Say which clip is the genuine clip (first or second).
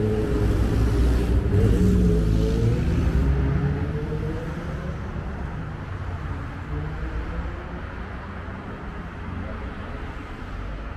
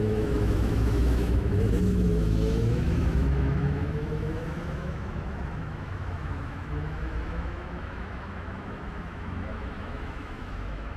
first